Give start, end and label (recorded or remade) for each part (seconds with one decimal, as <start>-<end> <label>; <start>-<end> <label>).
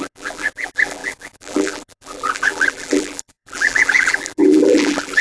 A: 0.0-5.2 remade